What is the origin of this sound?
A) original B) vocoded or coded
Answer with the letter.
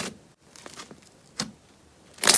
A